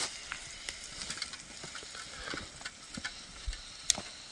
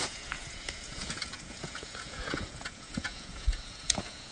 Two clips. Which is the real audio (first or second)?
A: first